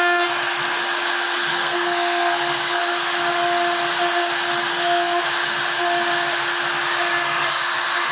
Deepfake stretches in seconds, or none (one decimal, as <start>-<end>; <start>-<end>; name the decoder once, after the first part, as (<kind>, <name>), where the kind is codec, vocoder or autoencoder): 1.5-2.8 (codec, SNAC); 4.7-5.2